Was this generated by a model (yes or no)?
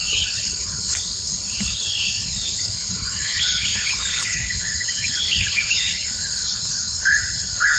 yes